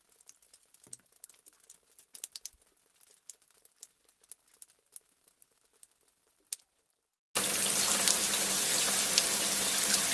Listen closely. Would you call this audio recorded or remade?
recorded